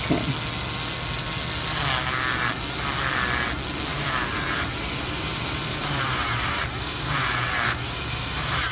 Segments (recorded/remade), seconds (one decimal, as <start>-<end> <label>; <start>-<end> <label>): 0.0-3.9 recorded; 3.9-8.7 remade

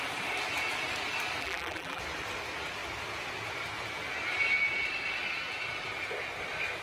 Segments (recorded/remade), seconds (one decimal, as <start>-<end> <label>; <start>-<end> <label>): 0.0-1.4 recorded; 1.4-2.0 remade; 2.0-6.8 recorded

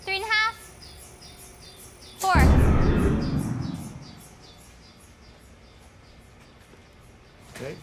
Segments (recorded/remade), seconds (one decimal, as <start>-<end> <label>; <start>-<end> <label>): 0.0-7.8 recorded

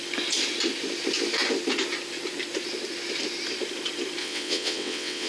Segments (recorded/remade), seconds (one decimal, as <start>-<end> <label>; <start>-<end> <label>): 0.0-4.2 recorded; 4.2-5.3 remade

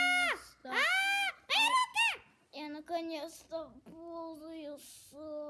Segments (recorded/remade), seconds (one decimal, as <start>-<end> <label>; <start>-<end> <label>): 0.0-5.5 recorded

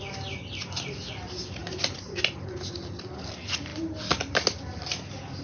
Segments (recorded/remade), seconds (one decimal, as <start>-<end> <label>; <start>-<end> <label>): 0.0-1.6 recorded; 1.6-2.2 remade; 2.2-5.4 recorded